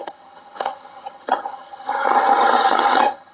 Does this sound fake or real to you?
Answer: fake